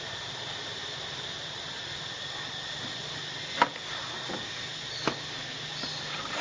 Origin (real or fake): real